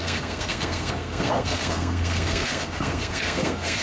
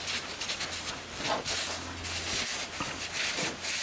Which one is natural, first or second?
second